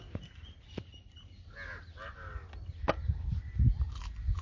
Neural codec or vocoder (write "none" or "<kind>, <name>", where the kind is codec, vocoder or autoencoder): none